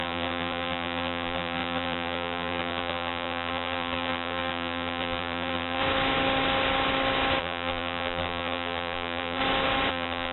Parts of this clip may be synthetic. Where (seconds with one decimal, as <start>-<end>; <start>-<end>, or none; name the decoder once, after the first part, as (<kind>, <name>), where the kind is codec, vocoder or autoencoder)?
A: 0.0-5.8 (vocoder, BigVGAN v2); 7.4-9.4; 9.9-10.3